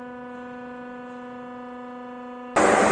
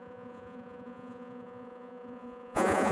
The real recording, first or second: first